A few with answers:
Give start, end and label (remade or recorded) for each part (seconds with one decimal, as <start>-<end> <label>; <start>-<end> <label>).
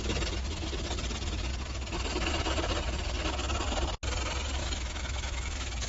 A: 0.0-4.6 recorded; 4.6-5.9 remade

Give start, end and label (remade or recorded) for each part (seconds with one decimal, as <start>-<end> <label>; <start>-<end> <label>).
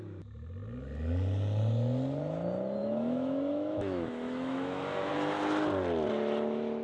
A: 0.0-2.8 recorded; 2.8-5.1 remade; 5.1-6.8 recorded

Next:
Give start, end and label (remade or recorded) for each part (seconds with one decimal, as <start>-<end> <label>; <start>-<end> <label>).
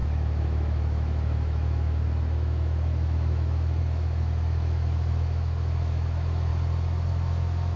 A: 0.0-6.5 remade; 6.5-7.1 recorded; 7.1-7.8 remade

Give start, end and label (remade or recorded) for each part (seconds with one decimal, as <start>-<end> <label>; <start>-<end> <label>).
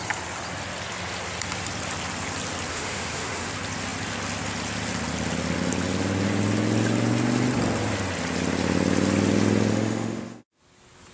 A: 0.0-2.7 recorded; 2.7-3.5 remade; 3.5-9.7 recorded; 9.7-10.6 remade; 10.6-11.1 recorded